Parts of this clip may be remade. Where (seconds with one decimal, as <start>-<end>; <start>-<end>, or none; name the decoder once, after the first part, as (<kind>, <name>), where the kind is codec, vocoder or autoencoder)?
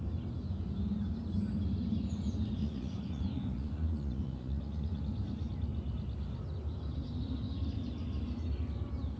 2.6-5.0 (vocoder, Vocos)